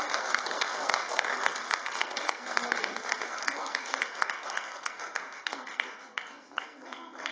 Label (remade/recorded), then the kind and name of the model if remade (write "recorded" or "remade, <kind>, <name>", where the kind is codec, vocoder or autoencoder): remade, codec, SNAC